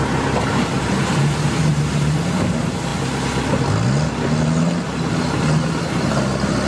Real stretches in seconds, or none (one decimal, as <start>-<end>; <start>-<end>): 0.0-6.7